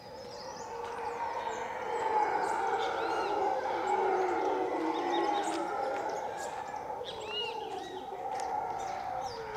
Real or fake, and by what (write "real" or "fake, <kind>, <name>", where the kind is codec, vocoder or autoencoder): real